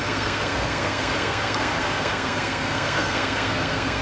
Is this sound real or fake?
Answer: fake